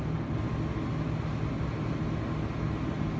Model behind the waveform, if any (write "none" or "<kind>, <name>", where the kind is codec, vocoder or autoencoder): none